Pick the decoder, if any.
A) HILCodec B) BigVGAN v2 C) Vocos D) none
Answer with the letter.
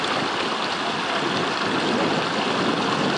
D